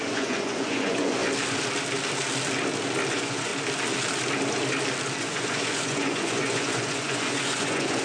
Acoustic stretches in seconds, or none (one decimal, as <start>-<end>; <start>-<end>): 1.2-3.1; 3.5-5.2